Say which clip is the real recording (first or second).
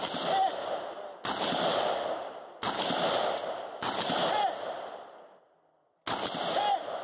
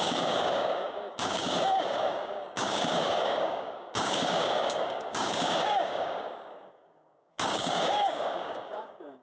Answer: first